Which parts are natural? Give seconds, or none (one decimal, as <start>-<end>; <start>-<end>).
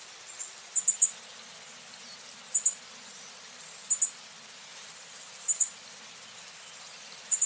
0.0-4.7; 5.7-7.5